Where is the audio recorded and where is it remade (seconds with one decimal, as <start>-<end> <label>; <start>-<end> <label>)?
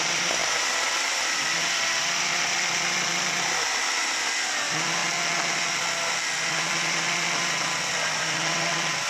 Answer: 0.0-5.0 remade; 5.0-6.5 recorded; 6.5-9.1 remade